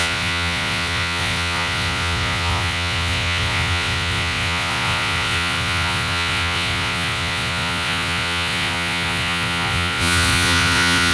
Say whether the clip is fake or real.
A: fake